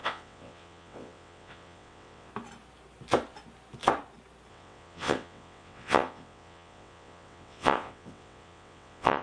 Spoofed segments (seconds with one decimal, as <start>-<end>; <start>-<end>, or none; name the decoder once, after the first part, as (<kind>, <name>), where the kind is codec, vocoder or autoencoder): 0.0-2.3 (vocoder, WaveNeXt); 4.5-9.2